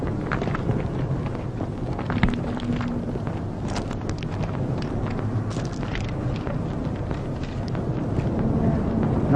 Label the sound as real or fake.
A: real